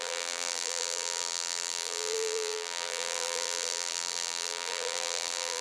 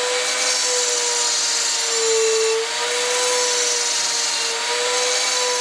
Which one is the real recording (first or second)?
second